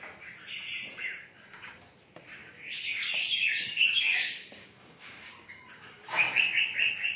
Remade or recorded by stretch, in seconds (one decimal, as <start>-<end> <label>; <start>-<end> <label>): 0.0-1.0 recorded; 1.0-1.9 remade; 1.9-2.4 recorded; 2.4-6.6 remade; 6.6-7.2 recorded